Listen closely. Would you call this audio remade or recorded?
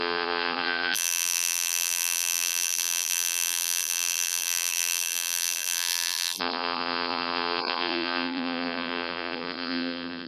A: remade